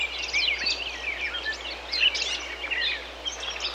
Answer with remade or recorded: recorded